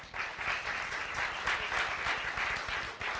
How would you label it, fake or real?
real